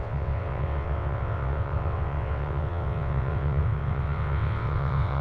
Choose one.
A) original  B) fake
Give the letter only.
B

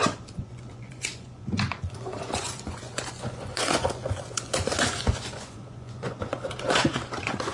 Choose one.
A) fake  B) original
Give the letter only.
A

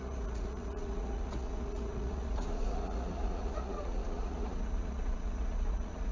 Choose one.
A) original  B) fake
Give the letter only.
B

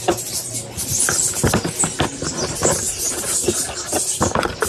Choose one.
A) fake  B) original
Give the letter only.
B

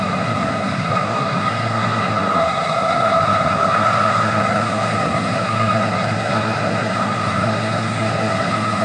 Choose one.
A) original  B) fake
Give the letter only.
B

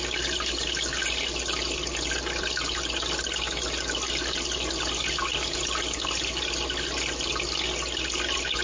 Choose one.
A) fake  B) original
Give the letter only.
B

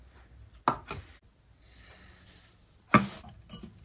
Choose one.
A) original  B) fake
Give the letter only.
A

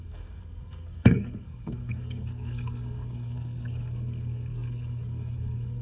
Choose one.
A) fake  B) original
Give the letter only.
A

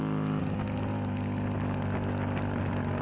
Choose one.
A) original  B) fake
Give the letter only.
A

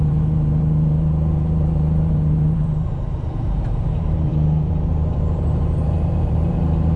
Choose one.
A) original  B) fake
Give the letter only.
B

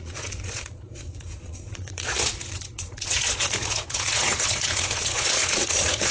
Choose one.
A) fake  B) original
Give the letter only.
A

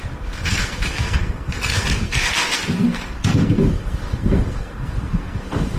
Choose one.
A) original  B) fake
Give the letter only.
B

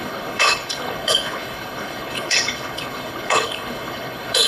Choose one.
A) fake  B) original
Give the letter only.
A